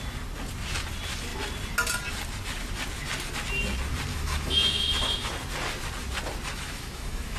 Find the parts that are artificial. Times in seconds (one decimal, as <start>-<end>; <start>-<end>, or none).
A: 4.1-5.3; 6.5-7.4